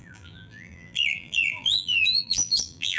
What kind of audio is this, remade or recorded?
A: remade